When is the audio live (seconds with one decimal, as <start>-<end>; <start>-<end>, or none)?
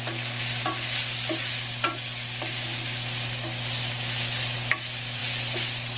0.0-6.0